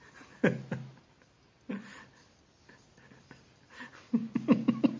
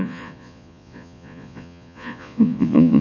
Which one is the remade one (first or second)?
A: second